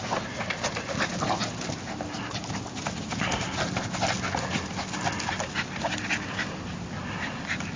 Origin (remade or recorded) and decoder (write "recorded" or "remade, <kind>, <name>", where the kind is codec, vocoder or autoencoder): recorded